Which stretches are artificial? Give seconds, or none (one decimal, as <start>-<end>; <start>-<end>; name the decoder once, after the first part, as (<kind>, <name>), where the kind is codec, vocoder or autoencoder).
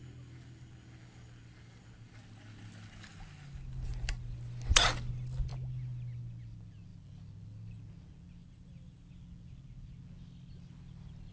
8.4-9.1 (vocoder, BigVGAN v2)